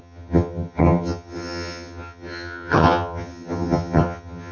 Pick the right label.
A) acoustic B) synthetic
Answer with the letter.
B